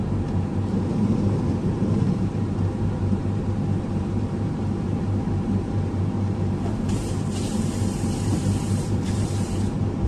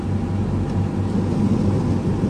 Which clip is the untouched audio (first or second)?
second